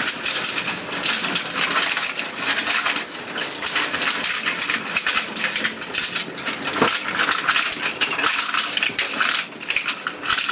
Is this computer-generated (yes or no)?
no